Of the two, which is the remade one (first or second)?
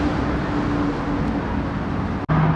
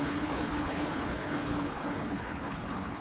second